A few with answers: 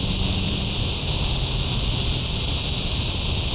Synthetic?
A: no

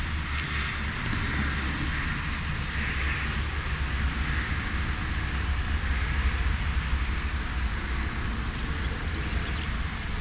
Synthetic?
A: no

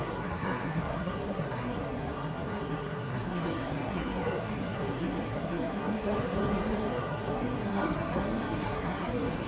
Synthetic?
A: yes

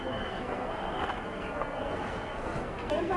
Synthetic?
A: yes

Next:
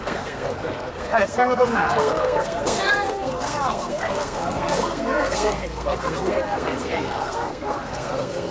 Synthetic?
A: yes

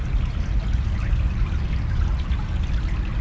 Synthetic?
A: no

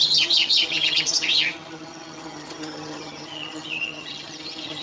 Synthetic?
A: yes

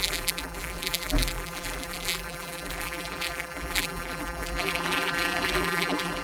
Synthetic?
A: yes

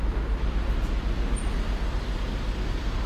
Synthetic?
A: no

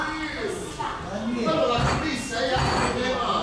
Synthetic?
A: no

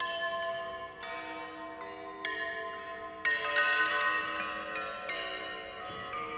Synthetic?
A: no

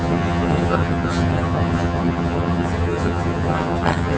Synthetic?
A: yes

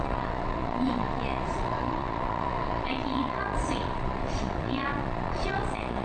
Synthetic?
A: yes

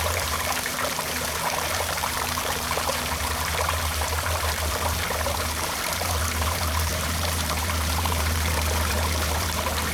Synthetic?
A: yes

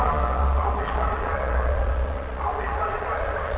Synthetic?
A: yes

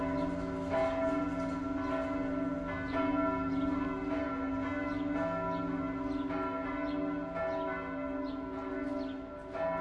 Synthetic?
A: no